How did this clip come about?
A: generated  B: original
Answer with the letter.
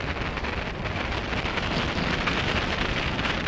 B